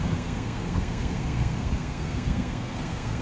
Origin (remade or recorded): remade